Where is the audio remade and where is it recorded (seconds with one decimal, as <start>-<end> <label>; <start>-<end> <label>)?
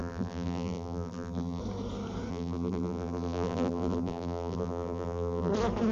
0.0-1.6 remade; 1.6-2.3 recorded; 2.3-5.5 remade; 5.5-5.9 recorded